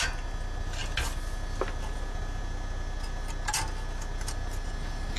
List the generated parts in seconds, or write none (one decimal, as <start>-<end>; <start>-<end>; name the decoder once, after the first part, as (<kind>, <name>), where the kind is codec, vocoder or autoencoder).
none